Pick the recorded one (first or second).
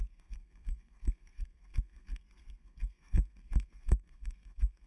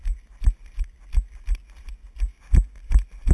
second